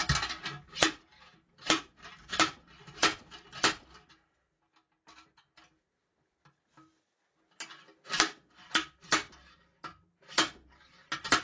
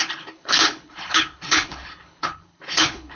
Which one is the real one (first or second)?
first